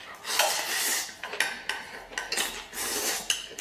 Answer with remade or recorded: recorded